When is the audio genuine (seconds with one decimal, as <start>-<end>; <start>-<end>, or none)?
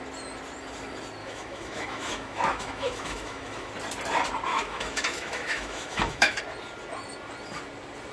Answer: 0.0-1.2; 3.7-4.5; 6.4-8.1